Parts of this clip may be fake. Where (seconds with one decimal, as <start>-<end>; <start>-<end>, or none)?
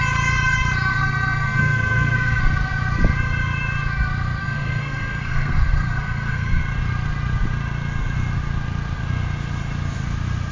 0.9-2.4; 4.4-6.6